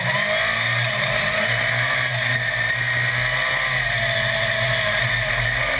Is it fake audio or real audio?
real